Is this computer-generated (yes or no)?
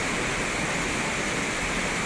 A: no